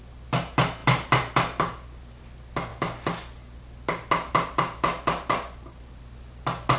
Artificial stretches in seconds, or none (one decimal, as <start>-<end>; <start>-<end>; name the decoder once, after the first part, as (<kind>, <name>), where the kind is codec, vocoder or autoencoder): none